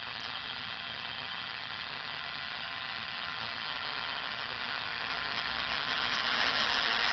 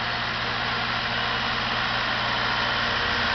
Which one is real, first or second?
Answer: second